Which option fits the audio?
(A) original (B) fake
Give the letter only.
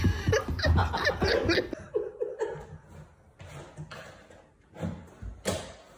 A